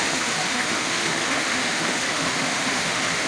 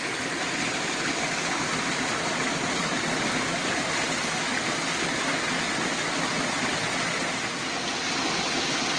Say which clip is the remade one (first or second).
first